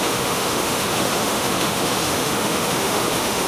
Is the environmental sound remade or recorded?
remade